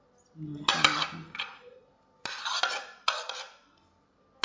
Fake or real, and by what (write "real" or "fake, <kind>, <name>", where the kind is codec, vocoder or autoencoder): real